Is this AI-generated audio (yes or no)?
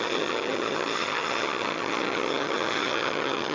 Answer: yes